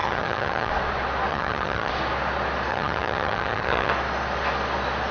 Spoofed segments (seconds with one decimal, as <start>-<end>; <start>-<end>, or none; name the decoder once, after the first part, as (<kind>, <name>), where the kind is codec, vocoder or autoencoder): 0.0-0.7 (vocoder, HiFi-GAN); 1.3-1.9; 2.7-3.9